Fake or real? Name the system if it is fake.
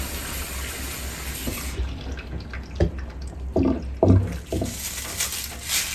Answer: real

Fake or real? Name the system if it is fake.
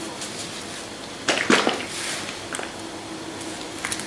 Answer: real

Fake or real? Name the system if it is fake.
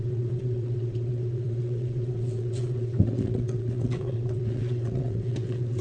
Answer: fake, vocoder, WaveNeXt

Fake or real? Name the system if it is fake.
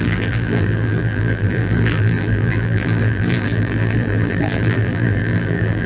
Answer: fake, vocoder, BigVGAN v2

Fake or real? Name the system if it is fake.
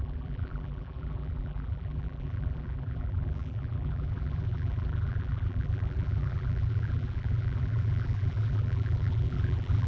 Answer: fake, vocoder, BigVGAN v2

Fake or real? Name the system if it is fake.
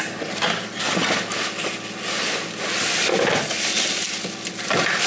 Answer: real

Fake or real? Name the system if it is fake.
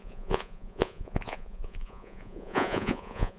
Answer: fake, vocoder, Vocos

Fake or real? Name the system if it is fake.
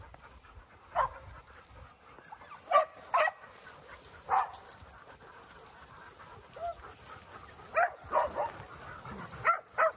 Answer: real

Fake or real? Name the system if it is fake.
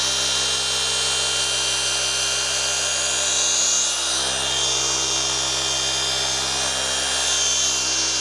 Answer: real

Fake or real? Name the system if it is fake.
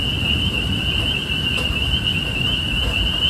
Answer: real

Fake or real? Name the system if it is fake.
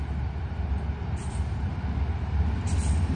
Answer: real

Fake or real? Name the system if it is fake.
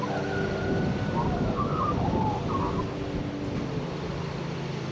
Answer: real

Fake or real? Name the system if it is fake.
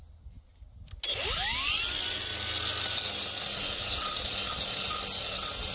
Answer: real